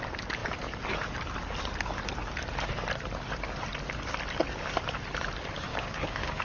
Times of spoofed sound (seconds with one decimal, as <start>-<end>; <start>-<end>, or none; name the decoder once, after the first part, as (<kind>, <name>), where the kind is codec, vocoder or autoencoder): 5.7-6.4 (codec, DAC)